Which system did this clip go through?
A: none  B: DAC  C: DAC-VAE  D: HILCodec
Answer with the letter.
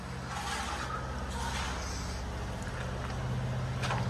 A